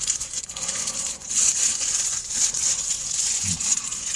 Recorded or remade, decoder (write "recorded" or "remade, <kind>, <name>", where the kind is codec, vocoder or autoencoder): remade, vocoder, Vocos